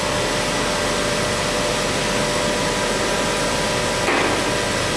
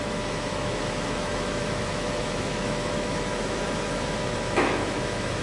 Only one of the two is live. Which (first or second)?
first